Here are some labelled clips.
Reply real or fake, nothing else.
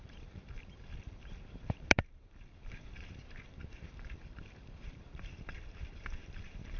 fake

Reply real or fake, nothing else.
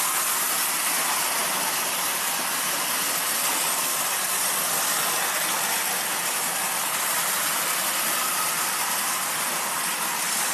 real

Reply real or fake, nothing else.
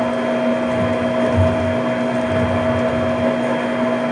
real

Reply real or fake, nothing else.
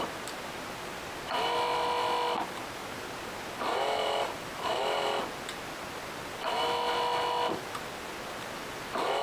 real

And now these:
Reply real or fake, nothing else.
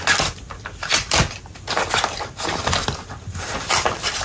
fake